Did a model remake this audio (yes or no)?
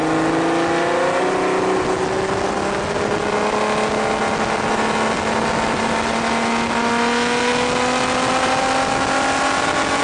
no